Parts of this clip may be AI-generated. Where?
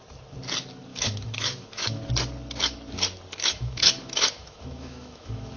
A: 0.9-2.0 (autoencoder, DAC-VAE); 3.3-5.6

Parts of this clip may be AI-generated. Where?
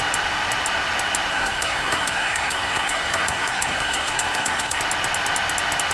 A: 1.3-4.8 (codec, SNAC)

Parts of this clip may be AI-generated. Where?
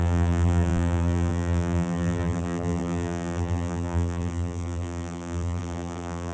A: 0.0-6.3 (vocoder, BigVGAN v2)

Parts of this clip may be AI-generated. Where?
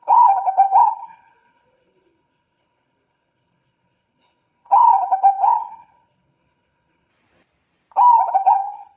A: 0.0-7.1 (codec, HILCodec); 8.3-9.0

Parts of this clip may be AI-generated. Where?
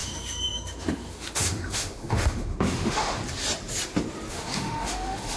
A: 0.0-3.2 (autoencoder, DAC-VAE); 4.3-5.4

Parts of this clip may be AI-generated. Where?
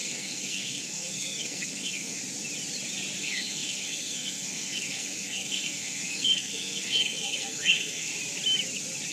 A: 0.0-2.2 (codec, SNAC); 3.2-8.1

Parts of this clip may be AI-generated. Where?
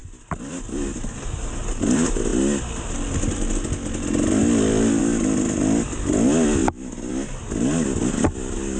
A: none